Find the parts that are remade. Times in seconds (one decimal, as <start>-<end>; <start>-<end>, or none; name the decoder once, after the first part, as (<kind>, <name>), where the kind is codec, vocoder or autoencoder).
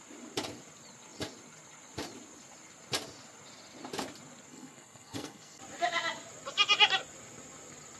4.5-5.6 (codec, SNAC)